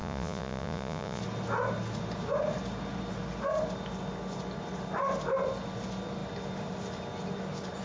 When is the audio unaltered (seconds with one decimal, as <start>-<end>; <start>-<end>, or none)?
1.2-7.8